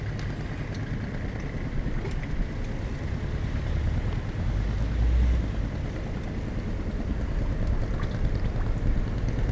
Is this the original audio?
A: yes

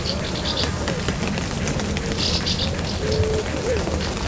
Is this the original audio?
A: yes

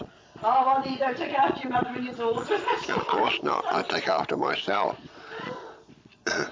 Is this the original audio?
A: no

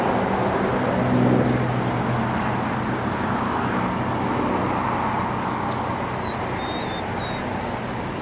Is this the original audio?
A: yes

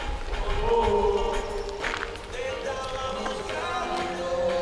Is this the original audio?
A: yes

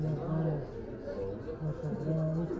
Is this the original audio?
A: yes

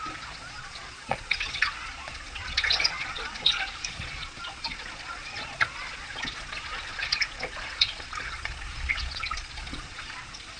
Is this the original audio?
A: no